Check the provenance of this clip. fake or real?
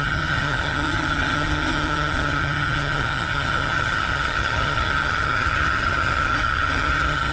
fake